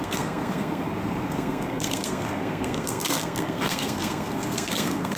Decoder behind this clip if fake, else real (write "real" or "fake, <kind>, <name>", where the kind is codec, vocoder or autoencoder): fake, codec, SNAC